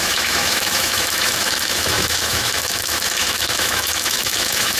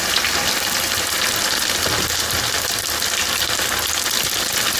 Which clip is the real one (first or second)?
second